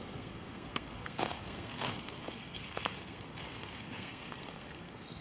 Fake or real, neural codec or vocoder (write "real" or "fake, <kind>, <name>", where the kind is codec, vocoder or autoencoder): fake, codec, SNAC